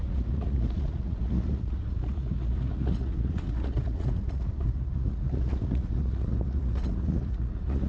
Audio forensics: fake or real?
fake